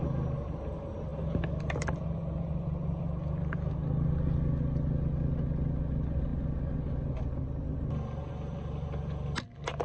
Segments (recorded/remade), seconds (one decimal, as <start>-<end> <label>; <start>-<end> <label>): 0.0-9.8 recorded